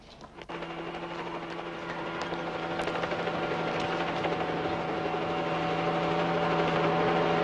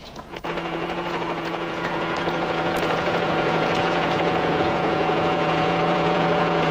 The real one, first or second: first